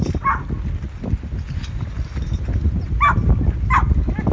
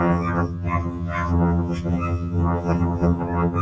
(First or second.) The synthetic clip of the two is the second